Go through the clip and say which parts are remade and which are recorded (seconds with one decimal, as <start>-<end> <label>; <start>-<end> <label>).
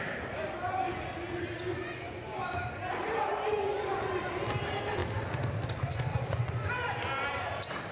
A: 0.0-1.7 recorded; 1.7-2.4 remade; 2.4-3.3 recorded; 3.3-4.0 remade; 4.0-5.9 recorded; 5.9-6.7 remade; 6.7-7.9 recorded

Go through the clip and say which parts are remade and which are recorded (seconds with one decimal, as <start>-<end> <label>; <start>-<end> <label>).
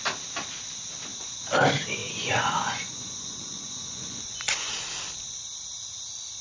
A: 0.0-2.0 recorded; 2.0-4.7 remade; 4.7-6.4 recorded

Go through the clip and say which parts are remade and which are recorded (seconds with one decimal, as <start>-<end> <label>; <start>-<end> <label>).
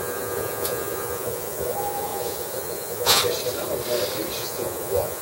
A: 0.0-3.2 remade; 3.2-4.4 recorded; 4.4-5.2 remade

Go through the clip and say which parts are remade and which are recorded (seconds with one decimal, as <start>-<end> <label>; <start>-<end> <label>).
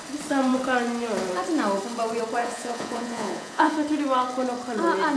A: 0.0-2.4 recorded; 2.4-3.7 remade; 3.7-5.2 recorded